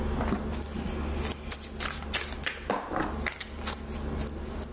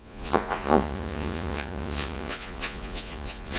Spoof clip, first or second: second